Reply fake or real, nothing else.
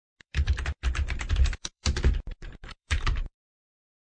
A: fake